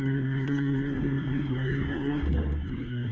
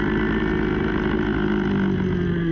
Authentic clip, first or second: second